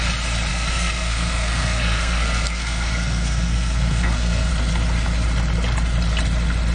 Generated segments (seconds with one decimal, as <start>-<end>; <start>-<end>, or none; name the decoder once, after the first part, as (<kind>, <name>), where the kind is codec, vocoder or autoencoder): 0.5-4.5 (codec, SNAC)